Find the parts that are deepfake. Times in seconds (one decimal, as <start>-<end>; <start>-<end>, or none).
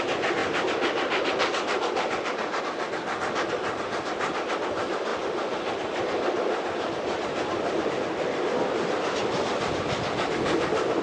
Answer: 0.4-2.6; 5.1-7.9